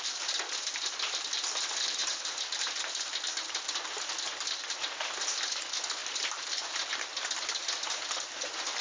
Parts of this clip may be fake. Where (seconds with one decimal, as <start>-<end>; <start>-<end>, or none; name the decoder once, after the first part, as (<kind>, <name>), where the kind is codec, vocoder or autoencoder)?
none